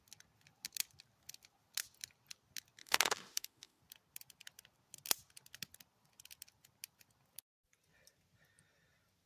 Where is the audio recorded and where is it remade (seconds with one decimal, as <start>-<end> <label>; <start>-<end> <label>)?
0.0-2.8 recorded; 2.8-3.8 remade; 3.8-9.3 recorded